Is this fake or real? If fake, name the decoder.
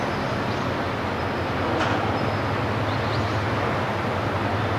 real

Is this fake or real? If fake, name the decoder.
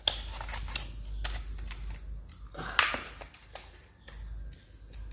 real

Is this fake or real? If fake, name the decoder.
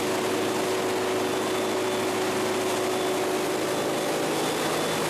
real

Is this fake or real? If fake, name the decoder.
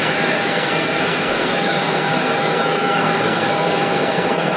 fake, codec, SNAC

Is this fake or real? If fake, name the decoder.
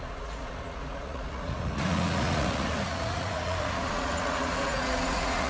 fake, vocoder, Vocos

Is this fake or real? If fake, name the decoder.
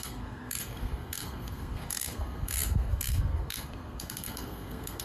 fake, codec, SNAC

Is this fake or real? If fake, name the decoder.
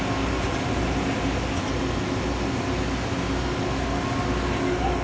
real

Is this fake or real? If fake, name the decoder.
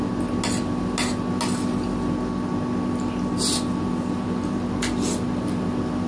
real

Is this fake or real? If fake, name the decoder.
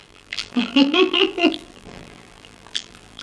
fake, vocoder, BigVGAN v2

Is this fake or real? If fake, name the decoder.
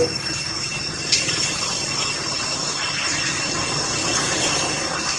real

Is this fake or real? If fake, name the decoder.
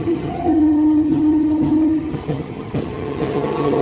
fake, vocoder, HiFi-GAN